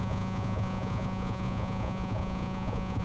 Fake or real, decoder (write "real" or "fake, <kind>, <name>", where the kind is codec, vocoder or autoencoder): fake, vocoder, Vocos